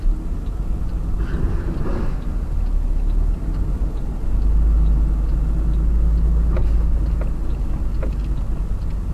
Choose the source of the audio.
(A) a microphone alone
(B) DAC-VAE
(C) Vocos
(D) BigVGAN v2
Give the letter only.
A